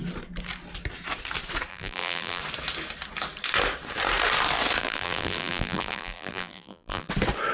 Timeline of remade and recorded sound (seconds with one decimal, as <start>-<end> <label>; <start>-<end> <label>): 0.0-1.7 recorded; 1.7-2.4 remade; 2.4-4.8 recorded; 4.8-7.1 remade; 7.1-7.5 recorded